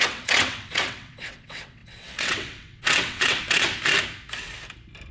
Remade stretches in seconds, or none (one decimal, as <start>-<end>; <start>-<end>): 0.0-3.7